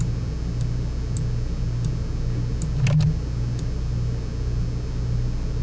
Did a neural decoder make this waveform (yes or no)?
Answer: no